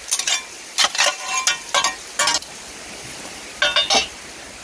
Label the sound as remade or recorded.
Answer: recorded